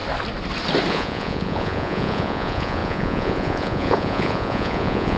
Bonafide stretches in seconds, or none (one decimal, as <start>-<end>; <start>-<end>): 0.0-0.9